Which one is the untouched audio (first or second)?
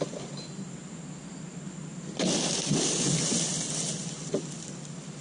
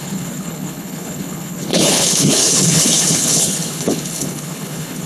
first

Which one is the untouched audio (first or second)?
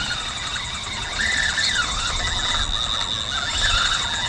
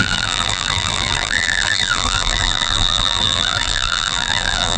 first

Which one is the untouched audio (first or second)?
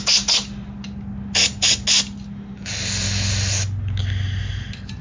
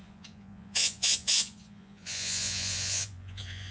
first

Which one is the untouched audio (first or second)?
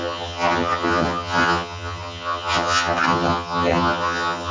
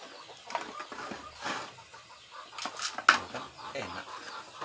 second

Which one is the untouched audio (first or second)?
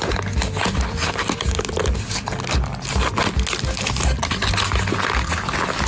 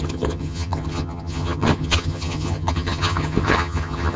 first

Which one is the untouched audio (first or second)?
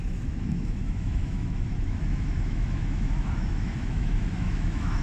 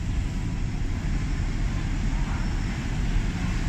second